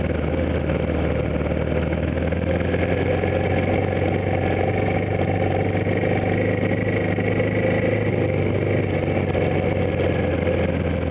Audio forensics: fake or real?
real